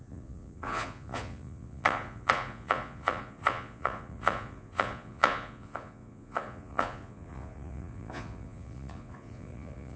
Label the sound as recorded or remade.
remade